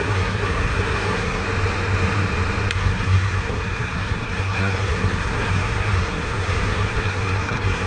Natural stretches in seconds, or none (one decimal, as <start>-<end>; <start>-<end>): 1.4-2.7